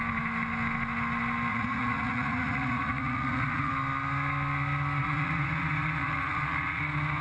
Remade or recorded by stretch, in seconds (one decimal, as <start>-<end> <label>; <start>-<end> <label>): 0.0-1.5 recorded; 1.5-3.7 remade; 3.7-5.0 recorded; 5.0-6.8 remade; 6.8-7.2 recorded